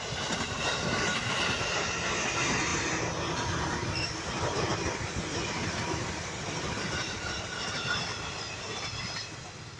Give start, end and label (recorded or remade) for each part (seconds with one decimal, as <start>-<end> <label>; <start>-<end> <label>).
0.0-4.7 recorded; 4.7-9.2 remade; 9.2-9.8 recorded